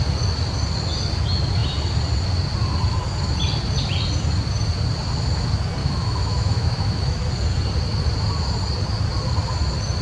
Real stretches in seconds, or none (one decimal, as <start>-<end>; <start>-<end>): 0.0-5.8; 7.3-10.0